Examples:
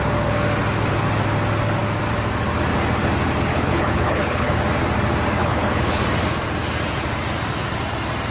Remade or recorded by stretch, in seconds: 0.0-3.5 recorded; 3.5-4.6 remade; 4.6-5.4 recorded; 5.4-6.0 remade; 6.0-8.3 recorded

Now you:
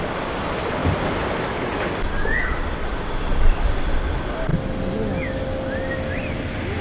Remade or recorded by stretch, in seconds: 0.0-6.8 recorded

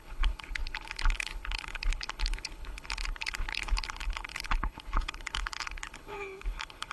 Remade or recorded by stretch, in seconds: 0.0-6.9 remade

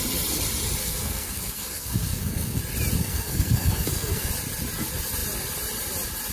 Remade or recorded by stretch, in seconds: 0.0-0.8 recorded; 0.8-2.6 remade; 2.6-3.0 recorded; 3.0-4.3 remade; 4.3-6.3 recorded

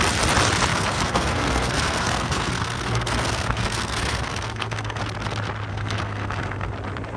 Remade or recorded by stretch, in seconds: 0.0-0.7 recorded; 0.7-5.0 remade; 5.0-5.7 recorded; 5.7-6.7 remade; 6.7-7.2 recorded

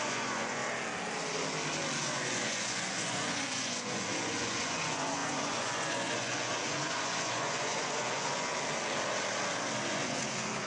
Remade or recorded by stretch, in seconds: 0.0-0.6 remade; 0.6-2.0 recorded; 2.0-8.5 remade; 8.5-9.9 recorded; 9.9-10.7 remade

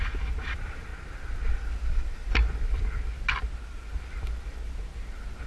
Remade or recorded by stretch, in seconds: 0.0-0.9 remade; 0.9-1.5 recorded; 1.5-2.3 remade; 2.3-5.5 recorded

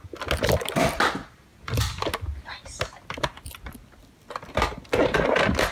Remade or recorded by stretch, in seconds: 0.0-5.7 recorded